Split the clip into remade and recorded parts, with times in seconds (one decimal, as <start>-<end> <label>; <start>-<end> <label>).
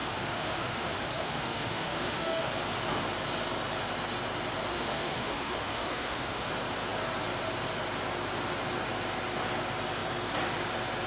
0.0-2.5 remade; 2.5-4.7 recorded; 4.7-6.5 remade; 6.5-11.1 recorded